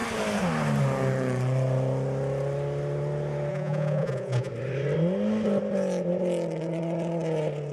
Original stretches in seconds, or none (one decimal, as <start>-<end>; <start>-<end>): 0.0-3.5; 4.5-7.7